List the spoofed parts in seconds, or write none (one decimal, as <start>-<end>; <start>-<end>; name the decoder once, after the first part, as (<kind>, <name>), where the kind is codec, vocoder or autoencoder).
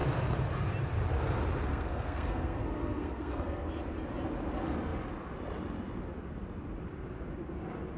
1.7-3.7 (codec, SNAC)